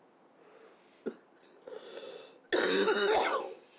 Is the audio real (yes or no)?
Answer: yes